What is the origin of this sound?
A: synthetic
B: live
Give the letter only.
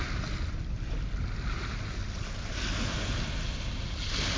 B